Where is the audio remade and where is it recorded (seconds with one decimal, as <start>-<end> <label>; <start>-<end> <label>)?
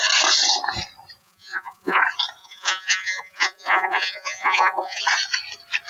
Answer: 0.0-1.2 recorded; 1.2-2.0 remade; 2.0-2.4 recorded; 2.4-5.0 remade; 5.0-5.9 recorded